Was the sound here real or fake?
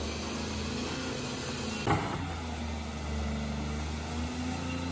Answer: real